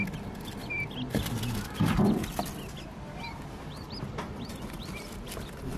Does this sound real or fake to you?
real